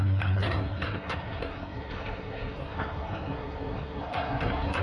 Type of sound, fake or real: fake